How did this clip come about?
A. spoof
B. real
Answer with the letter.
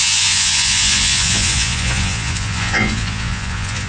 A